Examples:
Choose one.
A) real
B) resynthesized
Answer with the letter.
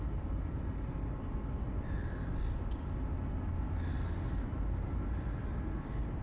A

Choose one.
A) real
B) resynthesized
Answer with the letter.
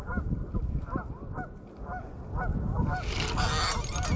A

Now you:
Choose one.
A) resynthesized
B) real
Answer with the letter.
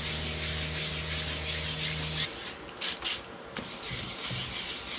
B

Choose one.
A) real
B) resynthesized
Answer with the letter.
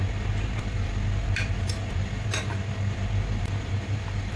B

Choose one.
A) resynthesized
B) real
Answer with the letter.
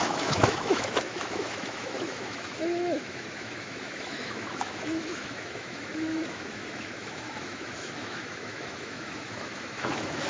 A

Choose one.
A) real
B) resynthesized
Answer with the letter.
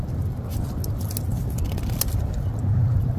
A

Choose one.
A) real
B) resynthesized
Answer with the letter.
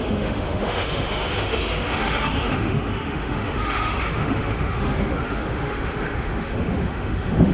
B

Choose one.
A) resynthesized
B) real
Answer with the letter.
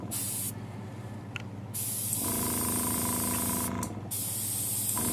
B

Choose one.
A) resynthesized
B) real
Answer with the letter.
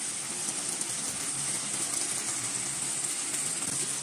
B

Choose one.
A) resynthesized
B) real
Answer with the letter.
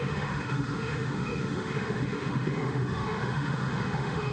A